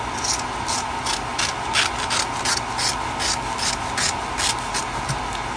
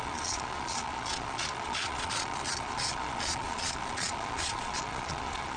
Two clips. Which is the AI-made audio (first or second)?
second